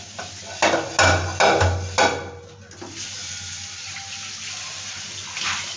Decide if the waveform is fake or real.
real